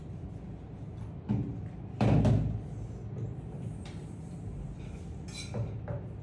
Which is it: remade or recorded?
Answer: recorded